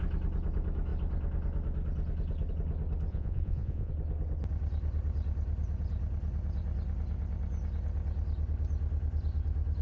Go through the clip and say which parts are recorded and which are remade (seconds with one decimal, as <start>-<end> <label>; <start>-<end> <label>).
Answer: 0.0-3.1 recorded; 3.1-3.9 remade; 3.9-9.8 recorded